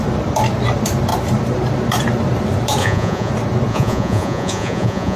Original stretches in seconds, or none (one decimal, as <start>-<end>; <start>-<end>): 0.0-2.8; 3.3-3.7

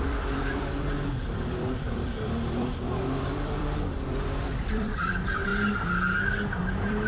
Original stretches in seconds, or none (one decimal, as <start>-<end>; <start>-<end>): 5.5-6.6

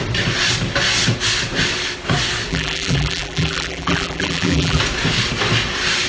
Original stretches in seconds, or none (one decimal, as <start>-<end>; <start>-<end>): 0.0-2.5; 4.8-6.1

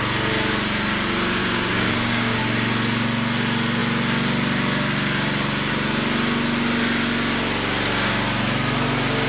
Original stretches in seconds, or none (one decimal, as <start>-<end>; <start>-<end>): 0.0-1.4; 2.4-9.3

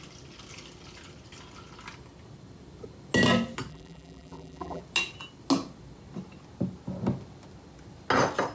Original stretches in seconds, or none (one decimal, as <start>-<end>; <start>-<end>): 0.0-3.7; 4.8-8.5

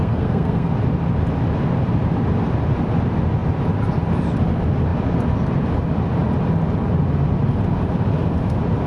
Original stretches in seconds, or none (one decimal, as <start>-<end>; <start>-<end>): 0.7-8.9

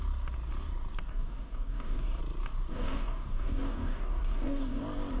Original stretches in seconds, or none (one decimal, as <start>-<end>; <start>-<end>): 0.0-1.1; 2.2-2.7; 4.8-5.2